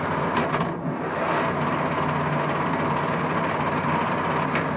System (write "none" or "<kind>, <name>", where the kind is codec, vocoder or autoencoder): none